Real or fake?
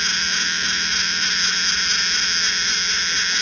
real